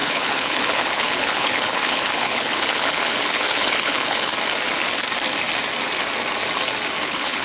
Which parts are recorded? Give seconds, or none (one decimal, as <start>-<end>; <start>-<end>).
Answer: 4.3-7.0